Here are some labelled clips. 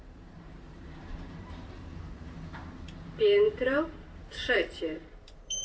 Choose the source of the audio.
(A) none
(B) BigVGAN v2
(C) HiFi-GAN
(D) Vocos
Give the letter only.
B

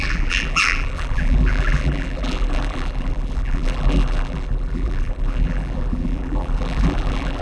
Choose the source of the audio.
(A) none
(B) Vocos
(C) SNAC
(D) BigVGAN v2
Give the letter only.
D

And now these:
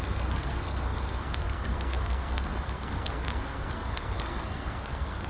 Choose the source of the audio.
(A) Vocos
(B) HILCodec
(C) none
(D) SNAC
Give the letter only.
D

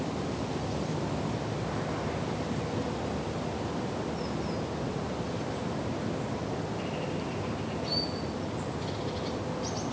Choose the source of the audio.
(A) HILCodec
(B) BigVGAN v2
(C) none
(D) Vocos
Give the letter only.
C